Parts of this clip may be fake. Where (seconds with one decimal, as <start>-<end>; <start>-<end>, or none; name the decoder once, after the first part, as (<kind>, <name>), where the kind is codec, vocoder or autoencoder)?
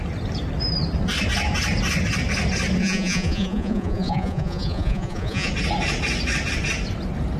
2.8-5.5 (vocoder, Vocos)